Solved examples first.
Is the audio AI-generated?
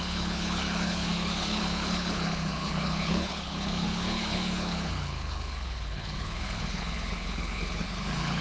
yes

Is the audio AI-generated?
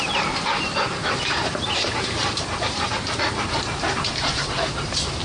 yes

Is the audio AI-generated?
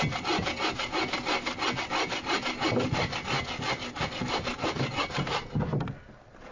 no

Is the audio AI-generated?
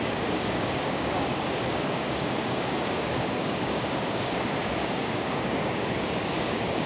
yes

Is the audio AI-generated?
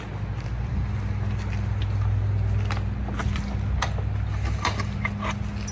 no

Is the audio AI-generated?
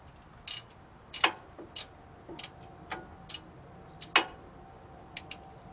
no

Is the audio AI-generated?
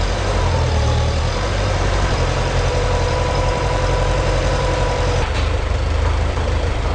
yes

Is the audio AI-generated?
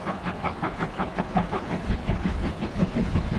yes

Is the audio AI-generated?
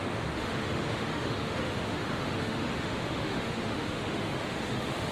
yes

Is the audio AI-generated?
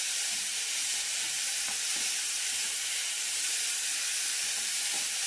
yes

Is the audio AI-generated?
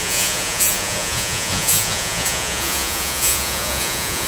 yes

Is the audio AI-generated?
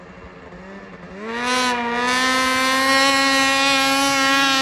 no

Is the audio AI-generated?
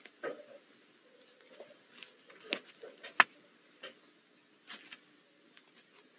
no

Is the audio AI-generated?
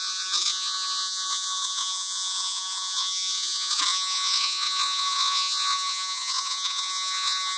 yes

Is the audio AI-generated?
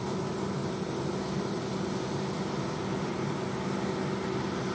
no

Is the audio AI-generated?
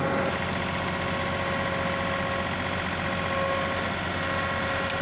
no